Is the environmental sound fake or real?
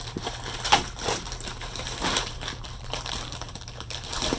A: fake